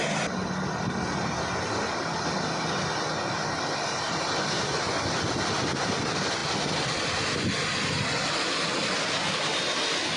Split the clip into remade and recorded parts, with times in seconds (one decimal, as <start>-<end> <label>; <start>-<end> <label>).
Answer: 0.0-10.2 recorded